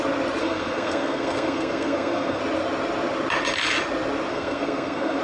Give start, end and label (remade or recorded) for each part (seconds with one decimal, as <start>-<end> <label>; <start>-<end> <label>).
0.0-0.4 recorded; 0.4-2.4 remade; 2.4-4.3 recorded; 4.3-5.2 remade